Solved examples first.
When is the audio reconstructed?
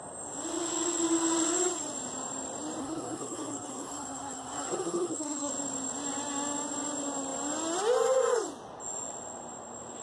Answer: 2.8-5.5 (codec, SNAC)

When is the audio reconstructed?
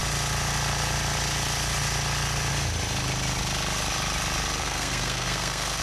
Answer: 4.6-5.8 (codec, SNAC)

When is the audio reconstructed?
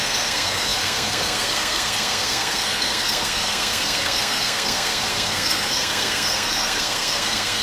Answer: 0.0-7.6 (codec, SNAC)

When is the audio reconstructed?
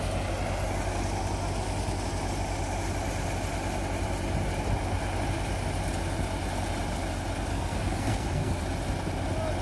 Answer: 7.5-8.6 (codec, SNAC)